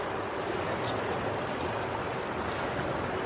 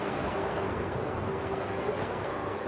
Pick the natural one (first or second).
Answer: first